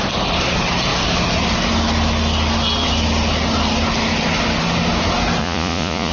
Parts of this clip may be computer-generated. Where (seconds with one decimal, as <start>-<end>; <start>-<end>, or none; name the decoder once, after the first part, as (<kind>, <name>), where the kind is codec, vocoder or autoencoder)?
5.4-6.1 (vocoder, Vocos)